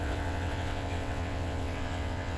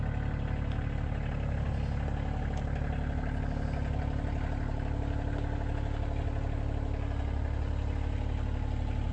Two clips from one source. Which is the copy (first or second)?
first